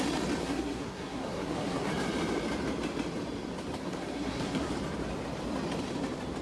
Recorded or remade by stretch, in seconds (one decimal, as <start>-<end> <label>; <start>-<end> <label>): 0.0-0.4 recorded; 0.4-1.9 remade; 1.9-3.8 recorded; 3.8-4.7 remade; 4.7-6.4 recorded